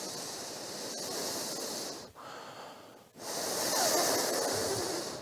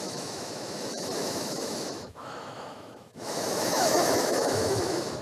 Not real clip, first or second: second